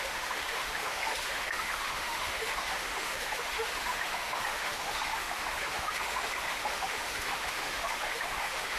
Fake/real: fake